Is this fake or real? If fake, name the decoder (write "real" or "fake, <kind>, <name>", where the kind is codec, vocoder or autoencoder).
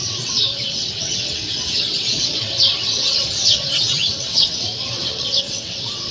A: fake, vocoder, WaveNeXt